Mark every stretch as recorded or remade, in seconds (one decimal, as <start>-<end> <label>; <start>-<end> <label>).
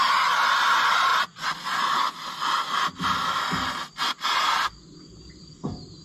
0.0-6.0 recorded